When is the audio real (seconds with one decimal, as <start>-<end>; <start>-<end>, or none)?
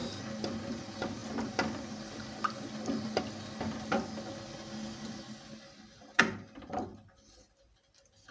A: 0.0-8.3